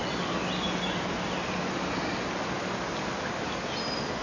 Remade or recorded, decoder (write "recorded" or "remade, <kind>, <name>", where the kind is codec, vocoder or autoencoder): recorded